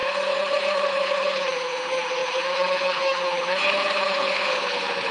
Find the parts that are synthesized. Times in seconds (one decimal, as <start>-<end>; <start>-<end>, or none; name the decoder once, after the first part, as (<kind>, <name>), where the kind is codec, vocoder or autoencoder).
0.0-5.1 (codec, HILCodec)

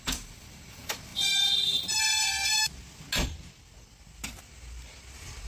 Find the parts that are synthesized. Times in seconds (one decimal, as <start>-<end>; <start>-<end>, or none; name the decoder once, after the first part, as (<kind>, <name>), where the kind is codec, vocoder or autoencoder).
none